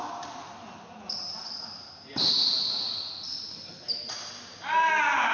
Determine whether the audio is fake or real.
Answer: real